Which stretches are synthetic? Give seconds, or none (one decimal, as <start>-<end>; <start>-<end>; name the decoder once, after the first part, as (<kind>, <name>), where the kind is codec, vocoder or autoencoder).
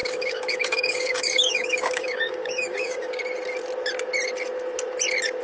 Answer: 0.0-3.2 (codec, DAC)